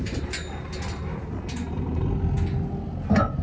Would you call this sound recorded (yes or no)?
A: yes